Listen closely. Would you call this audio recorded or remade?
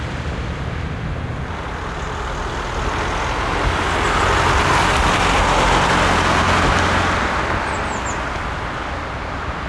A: recorded